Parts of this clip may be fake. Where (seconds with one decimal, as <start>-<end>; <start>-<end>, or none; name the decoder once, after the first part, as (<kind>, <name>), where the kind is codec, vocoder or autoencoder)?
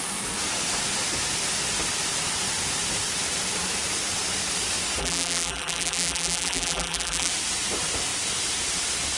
5.0-7.3 (vocoder, BigVGAN v2)